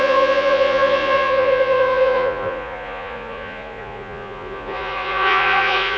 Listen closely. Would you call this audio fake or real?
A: fake